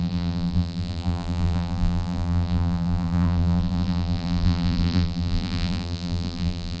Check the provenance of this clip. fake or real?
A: fake